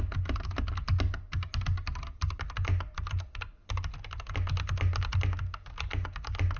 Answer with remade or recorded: recorded